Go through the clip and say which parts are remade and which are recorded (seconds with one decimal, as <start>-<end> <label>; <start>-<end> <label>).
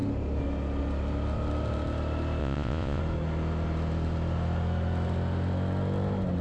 0.0-2.4 recorded; 2.4-3.0 remade; 3.0-6.4 recorded